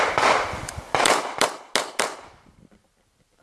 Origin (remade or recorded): recorded